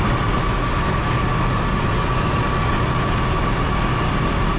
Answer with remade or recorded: recorded